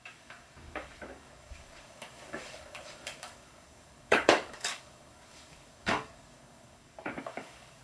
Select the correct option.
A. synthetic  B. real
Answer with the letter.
A